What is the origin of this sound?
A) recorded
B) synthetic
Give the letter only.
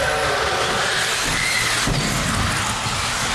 A